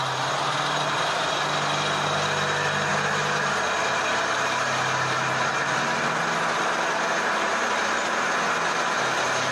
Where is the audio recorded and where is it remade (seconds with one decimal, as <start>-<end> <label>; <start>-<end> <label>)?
0.0-9.5 recorded